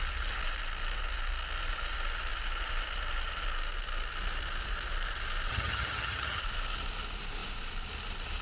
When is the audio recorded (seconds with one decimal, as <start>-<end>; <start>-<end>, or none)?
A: 0.0-5.5; 6.4-8.4